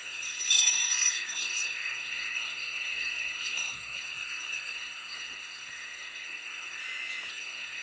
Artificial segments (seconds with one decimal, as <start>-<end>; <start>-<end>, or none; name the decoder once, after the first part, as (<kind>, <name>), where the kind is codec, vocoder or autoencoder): 0.0-6.8 (codec, SNAC); 7.3-7.8